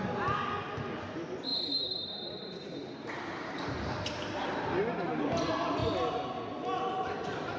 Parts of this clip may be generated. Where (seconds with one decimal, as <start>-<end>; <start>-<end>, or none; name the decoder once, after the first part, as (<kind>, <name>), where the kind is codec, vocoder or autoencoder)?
1.5-5.0 (vocoder, BigVGAN v2)